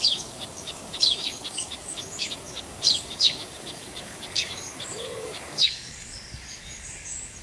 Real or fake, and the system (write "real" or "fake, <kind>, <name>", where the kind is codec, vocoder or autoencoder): fake, codec, DAC